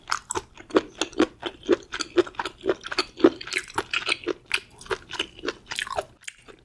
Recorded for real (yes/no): yes